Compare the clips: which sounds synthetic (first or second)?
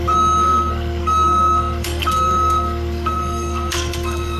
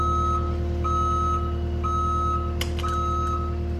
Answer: first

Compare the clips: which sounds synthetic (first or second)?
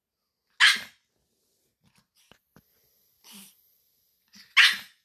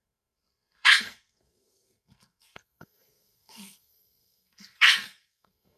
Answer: second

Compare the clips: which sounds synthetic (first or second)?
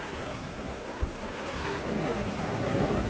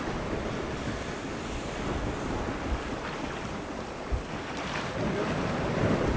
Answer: first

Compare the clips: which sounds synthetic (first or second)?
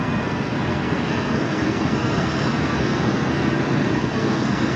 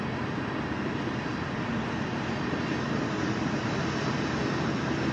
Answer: first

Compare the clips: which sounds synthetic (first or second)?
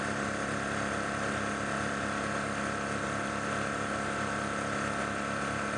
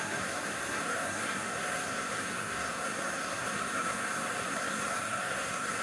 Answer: second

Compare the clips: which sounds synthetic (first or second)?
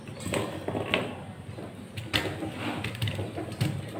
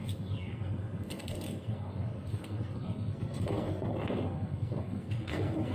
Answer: second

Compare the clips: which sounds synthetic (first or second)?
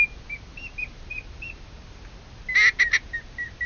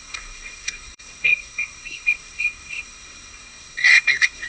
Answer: second